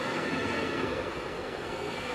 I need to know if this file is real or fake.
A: fake